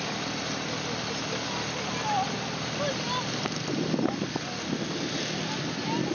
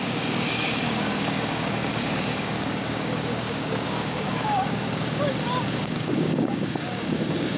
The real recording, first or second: first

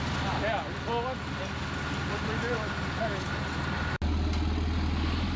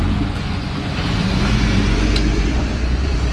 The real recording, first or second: first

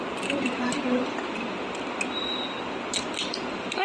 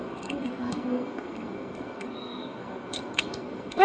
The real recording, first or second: first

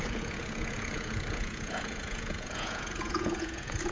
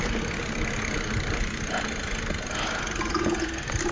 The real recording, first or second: second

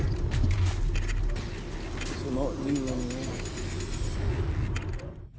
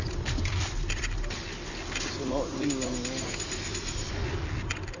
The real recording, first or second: first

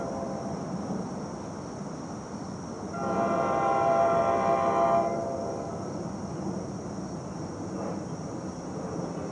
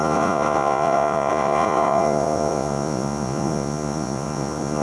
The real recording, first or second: first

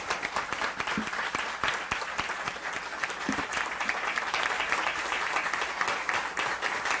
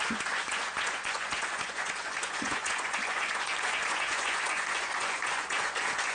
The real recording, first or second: first